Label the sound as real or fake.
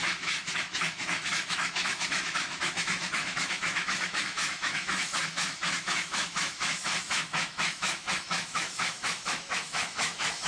fake